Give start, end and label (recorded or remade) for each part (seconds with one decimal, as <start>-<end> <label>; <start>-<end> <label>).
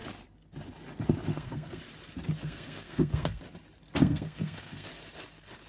0.0-1.3 recorded; 1.3-1.8 remade; 1.8-2.4 recorded; 2.4-3.4 remade; 3.4-4.0 recorded; 4.0-4.9 remade; 4.9-5.7 recorded